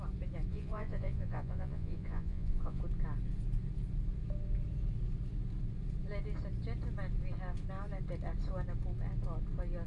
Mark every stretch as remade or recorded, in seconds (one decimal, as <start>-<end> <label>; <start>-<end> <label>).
0.0-0.5 recorded; 0.5-2.8 remade; 2.8-9.9 recorded